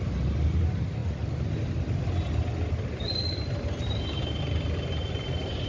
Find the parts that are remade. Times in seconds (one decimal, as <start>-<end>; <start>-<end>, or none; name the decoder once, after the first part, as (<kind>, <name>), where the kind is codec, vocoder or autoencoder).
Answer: none